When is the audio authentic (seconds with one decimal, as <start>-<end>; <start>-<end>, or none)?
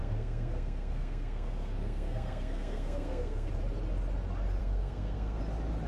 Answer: 3.5-4.6; 5.4-5.9